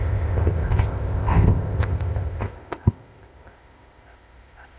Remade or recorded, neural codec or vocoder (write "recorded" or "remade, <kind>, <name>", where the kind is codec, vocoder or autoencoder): remade, codec, ZipCodec